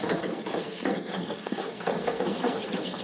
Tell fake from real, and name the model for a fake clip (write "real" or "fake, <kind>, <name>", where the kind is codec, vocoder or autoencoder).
fake, codec, SNAC